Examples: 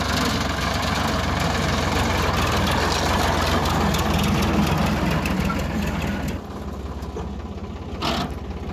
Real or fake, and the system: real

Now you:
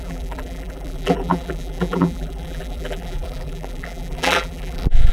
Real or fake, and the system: fake, vocoder, BigVGAN v2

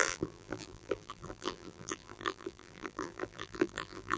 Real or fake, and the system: fake, vocoder, BigVGAN v2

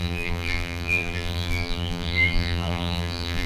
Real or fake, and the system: fake, vocoder, BigVGAN v2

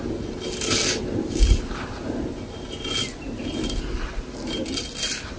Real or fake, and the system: real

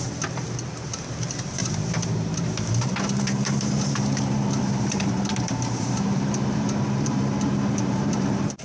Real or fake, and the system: fake, vocoder, BigVGAN v2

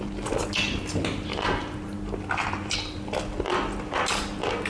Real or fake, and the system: real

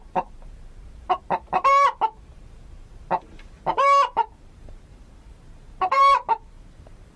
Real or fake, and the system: fake, vocoder, BigVGAN v2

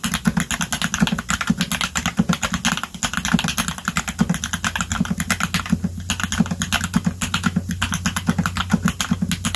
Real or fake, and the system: real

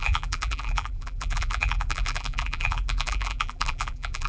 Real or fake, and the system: fake, vocoder, BigVGAN v2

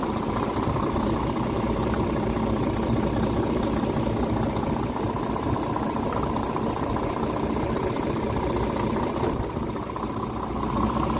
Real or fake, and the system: fake, vocoder, BigVGAN v2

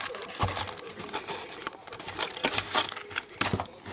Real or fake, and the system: real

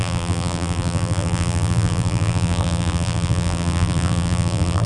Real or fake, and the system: fake, vocoder, BigVGAN v2